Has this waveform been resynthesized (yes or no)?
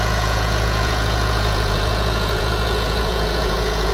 yes